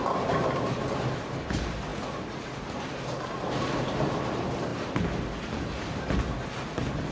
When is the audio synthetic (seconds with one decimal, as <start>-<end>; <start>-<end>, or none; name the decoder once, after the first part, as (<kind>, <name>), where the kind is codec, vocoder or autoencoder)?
none